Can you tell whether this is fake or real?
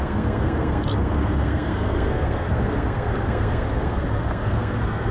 fake